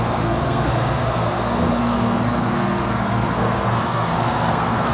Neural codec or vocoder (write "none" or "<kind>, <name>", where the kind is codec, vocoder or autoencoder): codec, SNAC